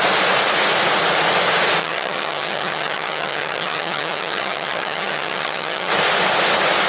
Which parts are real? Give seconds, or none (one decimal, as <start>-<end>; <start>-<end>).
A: 0.0-1.8; 5.9-6.9